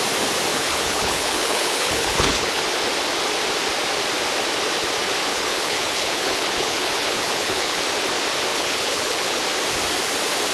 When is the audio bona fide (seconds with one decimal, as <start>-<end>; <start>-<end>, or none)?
0.0-0.5; 2.6-5.3; 7.8-8.5; 9.4-10.5